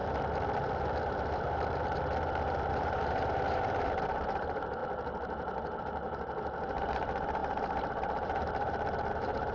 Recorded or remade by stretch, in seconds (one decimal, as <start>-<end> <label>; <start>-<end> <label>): 0.0-2.7 recorded; 2.7-4.8 remade; 4.8-5.8 recorded; 5.8-9.5 remade